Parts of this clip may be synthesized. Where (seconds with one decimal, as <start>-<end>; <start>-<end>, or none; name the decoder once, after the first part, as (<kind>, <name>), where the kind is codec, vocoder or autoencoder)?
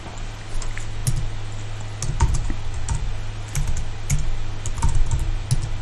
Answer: none